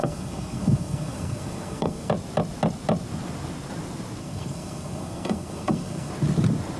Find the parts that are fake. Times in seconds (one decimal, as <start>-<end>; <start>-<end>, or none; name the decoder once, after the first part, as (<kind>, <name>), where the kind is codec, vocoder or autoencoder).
0.0-2.1 (codec, SNAC); 4.2-6.1